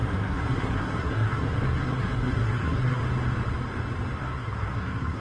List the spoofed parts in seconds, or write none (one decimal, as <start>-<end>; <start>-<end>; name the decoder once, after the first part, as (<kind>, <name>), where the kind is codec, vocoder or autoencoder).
0.0-3.0 (codec, SNAC); 4.2-5.2